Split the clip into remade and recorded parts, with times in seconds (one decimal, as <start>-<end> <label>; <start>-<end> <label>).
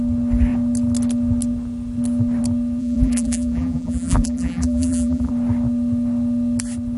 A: 0.0-2.8 recorded; 2.8-5.3 remade; 5.3-7.0 recorded